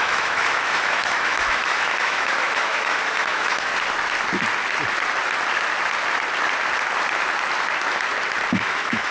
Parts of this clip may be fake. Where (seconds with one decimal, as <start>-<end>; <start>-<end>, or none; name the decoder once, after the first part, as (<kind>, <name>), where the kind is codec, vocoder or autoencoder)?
0.0-3.7 (autoencoder, DAC-VAE); 8.5-9.1